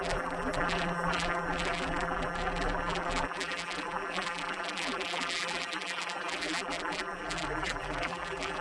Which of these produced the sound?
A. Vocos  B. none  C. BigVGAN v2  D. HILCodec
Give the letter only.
C